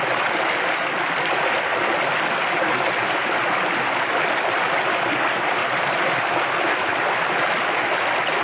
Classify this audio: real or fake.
real